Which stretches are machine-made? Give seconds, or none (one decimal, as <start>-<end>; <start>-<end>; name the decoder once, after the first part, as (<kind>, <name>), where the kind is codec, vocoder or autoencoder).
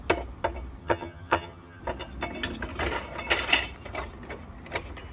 0.8-1.8 (vocoder, HiFi-GAN)